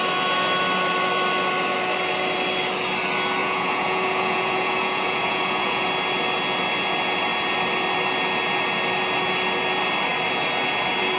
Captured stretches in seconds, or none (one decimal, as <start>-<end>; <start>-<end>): 0.0-3.4; 5.9-11.2